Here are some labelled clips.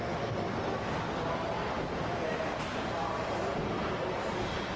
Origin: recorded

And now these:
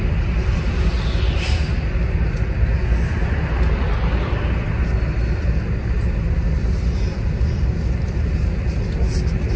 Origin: recorded